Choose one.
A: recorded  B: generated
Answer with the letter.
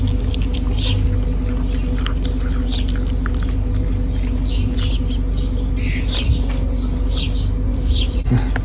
A